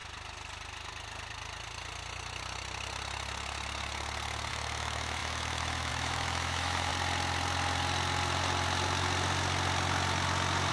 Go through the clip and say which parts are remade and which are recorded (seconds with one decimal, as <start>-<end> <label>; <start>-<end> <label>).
0.0-4.5 recorded; 4.5-6.9 remade; 6.9-10.7 recorded